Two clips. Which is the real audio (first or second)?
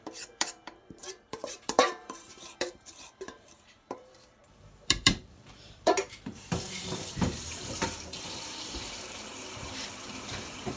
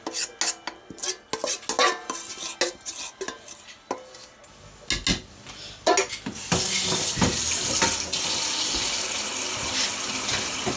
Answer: second